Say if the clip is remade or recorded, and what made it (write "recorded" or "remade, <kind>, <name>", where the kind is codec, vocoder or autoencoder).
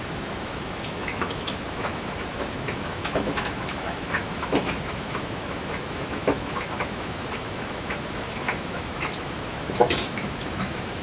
remade, autoencoder, DAC-VAE